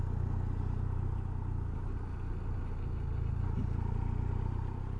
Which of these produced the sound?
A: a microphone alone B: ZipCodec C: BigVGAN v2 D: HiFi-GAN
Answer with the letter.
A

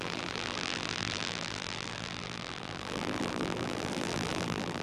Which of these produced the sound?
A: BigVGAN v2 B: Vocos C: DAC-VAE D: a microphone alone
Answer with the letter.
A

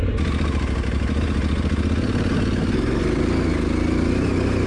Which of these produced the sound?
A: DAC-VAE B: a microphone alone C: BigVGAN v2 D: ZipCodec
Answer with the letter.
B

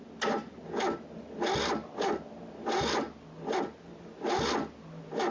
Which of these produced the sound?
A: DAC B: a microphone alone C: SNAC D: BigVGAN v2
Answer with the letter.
B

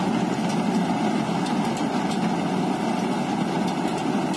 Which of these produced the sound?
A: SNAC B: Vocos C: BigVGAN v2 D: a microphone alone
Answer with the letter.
D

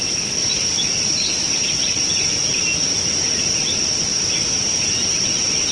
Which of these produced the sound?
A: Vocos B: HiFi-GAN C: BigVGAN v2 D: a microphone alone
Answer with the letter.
D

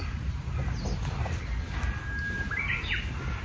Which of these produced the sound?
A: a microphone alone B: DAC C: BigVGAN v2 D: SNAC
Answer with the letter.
A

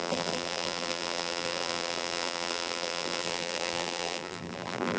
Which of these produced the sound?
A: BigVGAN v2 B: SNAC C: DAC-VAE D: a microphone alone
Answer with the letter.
A